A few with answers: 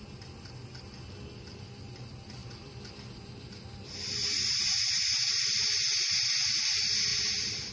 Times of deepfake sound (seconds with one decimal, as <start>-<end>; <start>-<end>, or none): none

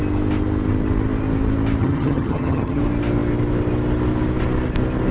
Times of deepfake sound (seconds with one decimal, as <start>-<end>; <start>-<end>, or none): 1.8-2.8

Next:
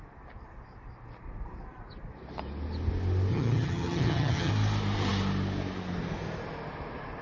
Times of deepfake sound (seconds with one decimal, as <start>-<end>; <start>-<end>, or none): 3.3-4.5

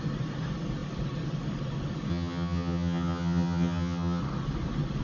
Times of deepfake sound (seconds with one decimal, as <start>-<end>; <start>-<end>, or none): 2.1-4.2

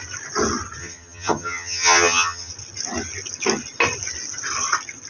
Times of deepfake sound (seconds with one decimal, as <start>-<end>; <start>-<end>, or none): 0.8-2.5